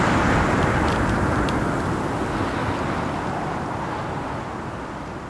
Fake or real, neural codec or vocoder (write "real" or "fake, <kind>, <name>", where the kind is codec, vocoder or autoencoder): real